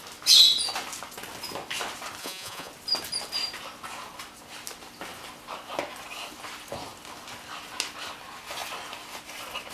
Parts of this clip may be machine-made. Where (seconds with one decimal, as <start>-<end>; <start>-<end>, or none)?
2.2-2.7